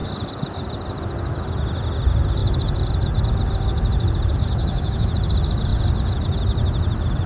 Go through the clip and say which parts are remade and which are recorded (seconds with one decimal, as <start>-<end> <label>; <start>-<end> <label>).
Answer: 0.0-4.6 recorded; 4.6-5.1 remade; 5.1-7.3 recorded